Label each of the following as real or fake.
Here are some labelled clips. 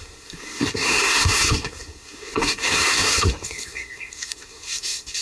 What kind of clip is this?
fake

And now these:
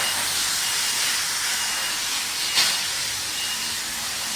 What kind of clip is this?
real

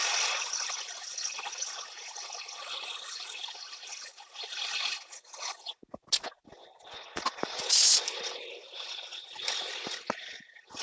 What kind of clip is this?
real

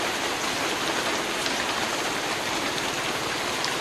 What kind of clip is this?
real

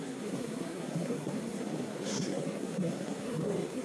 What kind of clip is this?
fake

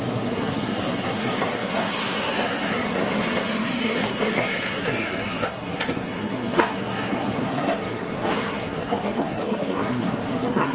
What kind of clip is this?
fake